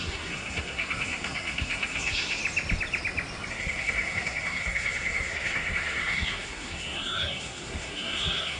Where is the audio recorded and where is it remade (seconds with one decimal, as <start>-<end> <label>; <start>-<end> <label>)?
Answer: 0.0-2.4 remade; 2.4-3.5 recorded; 3.5-8.6 remade